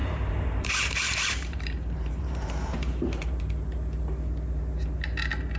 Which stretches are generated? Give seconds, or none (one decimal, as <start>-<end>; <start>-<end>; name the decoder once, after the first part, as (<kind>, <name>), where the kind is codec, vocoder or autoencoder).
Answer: 0.0-3.4 (vocoder, BigVGAN v2)